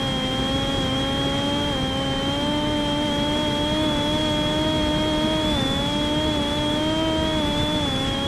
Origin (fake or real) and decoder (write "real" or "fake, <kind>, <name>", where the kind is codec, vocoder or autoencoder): real